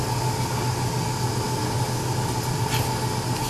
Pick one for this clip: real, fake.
real